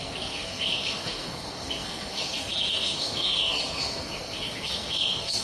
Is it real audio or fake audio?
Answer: fake